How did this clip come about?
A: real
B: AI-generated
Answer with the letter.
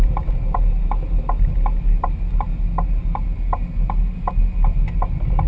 A